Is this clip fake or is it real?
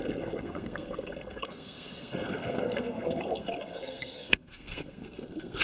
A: fake